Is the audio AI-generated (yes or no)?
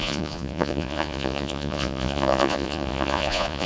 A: yes